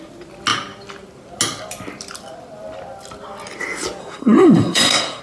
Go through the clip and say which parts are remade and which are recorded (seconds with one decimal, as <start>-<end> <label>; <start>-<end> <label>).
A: 0.0-4.0 recorded; 4.0-5.2 remade